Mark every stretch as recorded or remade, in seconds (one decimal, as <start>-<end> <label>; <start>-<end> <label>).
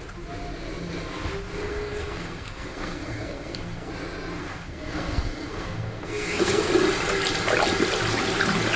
0.0-1.5 recorded; 1.5-3.9 remade; 3.9-4.4 recorded; 4.4-6.7 remade; 6.7-8.8 recorded